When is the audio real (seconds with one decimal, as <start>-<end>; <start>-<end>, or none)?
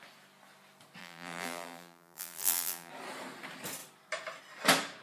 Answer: 0.0-1.0; 2.9-5.0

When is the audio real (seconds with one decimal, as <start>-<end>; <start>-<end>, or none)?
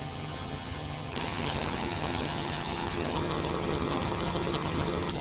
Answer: none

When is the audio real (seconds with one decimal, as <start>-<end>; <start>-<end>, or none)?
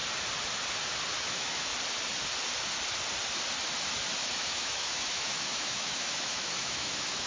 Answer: 0.0-1.2; 1.7-4.3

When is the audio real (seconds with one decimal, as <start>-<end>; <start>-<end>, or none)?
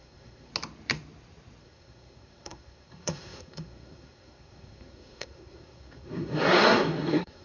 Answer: 0.5-1.6